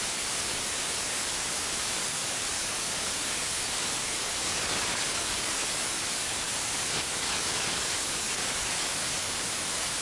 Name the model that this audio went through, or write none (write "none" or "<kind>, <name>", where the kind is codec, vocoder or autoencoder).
codec, DAC